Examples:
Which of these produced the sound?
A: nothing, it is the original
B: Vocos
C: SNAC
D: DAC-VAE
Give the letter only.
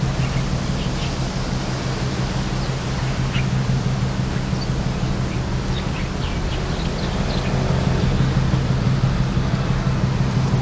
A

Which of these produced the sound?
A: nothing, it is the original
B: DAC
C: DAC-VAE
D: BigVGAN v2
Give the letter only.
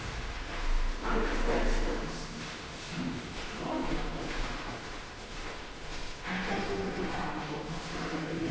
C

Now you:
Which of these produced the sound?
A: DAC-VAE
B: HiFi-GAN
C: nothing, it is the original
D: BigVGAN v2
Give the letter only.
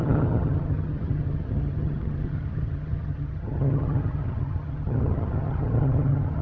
B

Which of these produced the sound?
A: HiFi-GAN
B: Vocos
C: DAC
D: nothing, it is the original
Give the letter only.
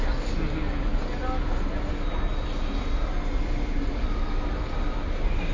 D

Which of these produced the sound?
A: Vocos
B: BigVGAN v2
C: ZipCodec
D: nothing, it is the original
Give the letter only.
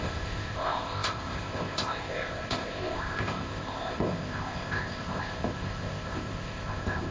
C